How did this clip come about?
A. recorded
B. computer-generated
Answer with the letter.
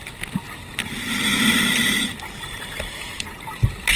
A